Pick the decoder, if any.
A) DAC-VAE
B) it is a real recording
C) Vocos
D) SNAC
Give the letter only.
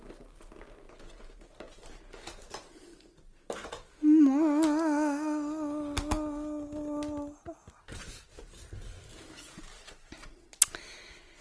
B